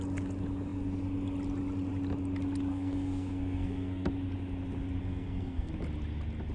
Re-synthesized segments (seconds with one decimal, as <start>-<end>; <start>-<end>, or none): 2.7-4.1; 5.0-5.7